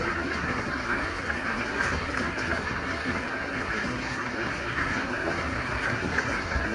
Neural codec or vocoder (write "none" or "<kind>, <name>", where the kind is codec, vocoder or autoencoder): codec, SNAC